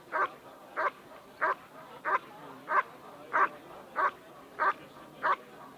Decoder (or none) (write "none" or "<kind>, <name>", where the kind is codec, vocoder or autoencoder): none